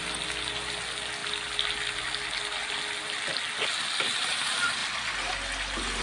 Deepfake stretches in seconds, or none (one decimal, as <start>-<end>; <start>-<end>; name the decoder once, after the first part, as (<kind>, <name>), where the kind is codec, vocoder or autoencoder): none